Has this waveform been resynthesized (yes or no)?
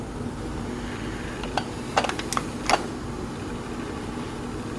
no